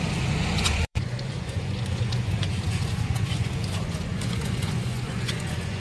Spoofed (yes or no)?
yes